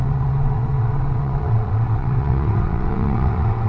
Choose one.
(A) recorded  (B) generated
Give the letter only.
B